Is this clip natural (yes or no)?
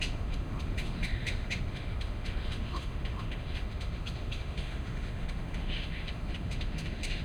no